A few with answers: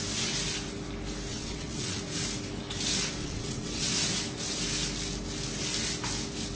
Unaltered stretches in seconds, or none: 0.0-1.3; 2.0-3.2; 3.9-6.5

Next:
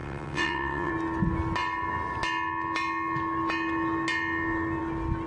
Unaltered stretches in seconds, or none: 0.9-5.3

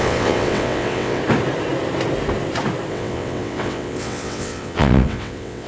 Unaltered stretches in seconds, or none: 1.2-2.9

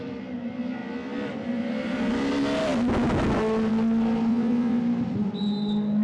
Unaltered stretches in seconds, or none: 0.0-4.3; 4.8-6.0

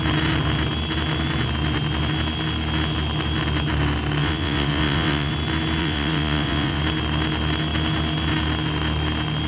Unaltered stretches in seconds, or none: 0.0-4.2; 5.3-5.8; 6.8-9.5

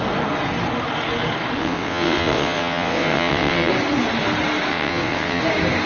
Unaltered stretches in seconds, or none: 0.0-1.6; 3.7-4.7; 5.4-5.9